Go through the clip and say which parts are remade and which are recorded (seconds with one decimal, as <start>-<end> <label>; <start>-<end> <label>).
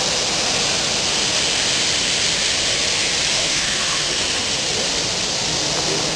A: 0.0-3.3 recorded; 3.3-4.1 remade; 4.1-6.2 recorded